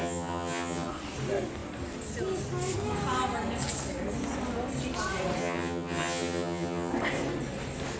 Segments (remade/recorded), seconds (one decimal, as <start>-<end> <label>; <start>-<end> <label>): 0.0-0.9 remade; 0.9-5.4 recorded; 5.4-6.9 remade; 6.9-8.0 recorded